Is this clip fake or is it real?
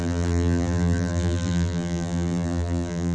fake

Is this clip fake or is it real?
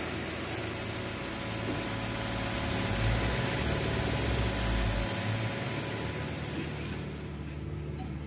real